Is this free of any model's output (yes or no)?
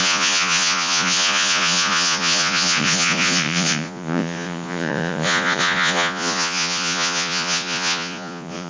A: no